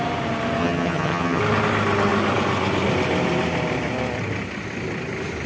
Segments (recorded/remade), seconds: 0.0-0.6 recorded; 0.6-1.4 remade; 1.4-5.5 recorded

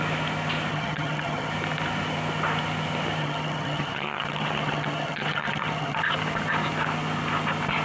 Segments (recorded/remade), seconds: 0.0-0.7 recorded; 0.7-1.5 remade; 1.5-3.2 recorded; 3.2-6.0 remade; 6.0-7.8 recorded

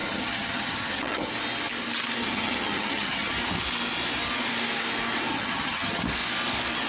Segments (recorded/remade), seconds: 0.0-1.3 remade; 1.3-2.2 recorded; 2.2-3.3 remade; 3.3-5.3 recorded; 5.3-6.0 remade; 6.0-6.9 recorded